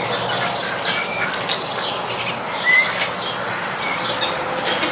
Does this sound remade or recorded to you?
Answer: recorded